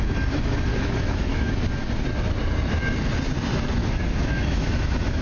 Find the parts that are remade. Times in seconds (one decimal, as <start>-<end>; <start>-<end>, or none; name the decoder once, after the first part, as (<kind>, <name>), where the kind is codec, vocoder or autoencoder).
0.7-1.5 (autoencoder, DAC-VAE); 3.8-5.2